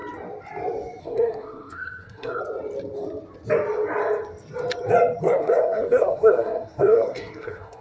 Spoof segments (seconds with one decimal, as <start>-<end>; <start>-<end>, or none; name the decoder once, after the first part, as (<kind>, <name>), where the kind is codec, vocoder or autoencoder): 1.0-2.4 (codec, SNAC); 5.2-7.8